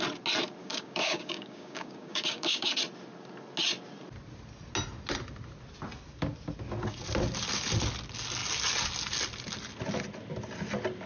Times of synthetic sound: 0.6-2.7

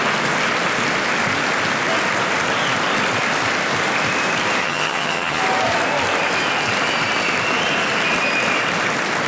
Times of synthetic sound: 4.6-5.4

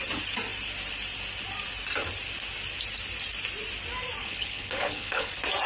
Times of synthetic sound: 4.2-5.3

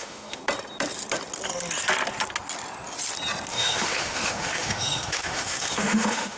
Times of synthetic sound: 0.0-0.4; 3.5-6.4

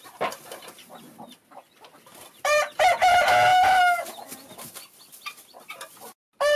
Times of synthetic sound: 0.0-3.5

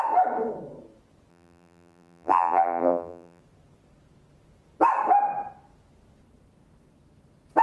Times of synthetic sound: 1.3-3.4

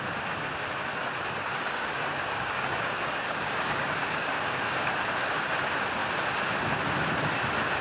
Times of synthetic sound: 1.5-4.9

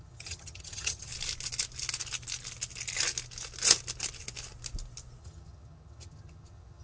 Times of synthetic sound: 0.0-1.1; 5.2-6.8